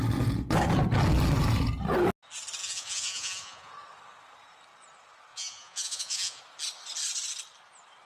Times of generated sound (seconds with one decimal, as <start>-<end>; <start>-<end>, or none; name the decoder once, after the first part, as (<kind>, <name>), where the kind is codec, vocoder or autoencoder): 2.6-3.7 (vocoder, Vocos); 5.3-6.4